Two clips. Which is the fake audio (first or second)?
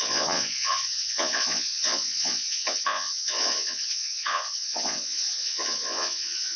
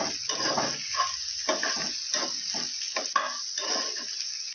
first